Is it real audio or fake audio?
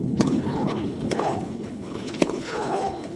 fake